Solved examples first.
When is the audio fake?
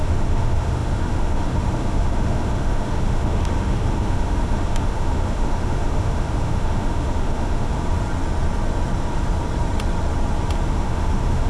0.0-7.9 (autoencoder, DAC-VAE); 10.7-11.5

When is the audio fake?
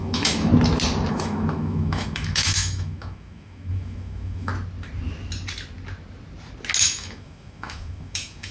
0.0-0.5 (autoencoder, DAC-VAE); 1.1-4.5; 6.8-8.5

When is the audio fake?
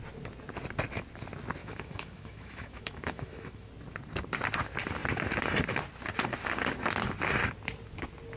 1.6-3.7 (autoencoder, DAC-VAE)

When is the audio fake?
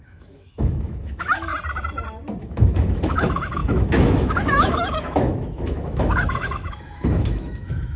0.0-1.5 (autoencoder, DAC-VAE); 2.4-8.0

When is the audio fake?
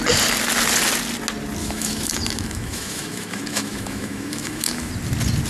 1.6-4.9 (autoencoder, DAC-VAE)